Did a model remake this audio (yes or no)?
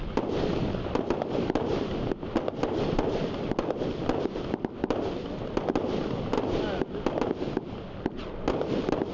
no